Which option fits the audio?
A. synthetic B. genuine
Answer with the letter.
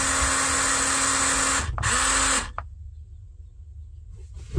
B